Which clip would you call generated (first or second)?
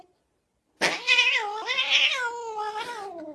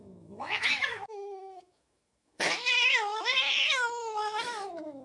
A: second